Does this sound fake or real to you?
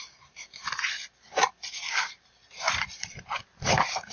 fake